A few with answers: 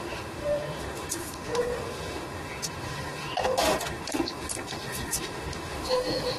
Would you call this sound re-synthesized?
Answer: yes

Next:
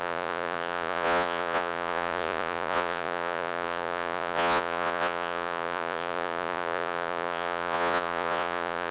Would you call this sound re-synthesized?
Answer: yes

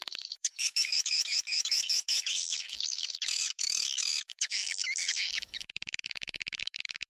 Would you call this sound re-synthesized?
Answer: yes